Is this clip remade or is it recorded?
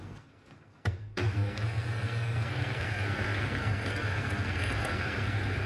remade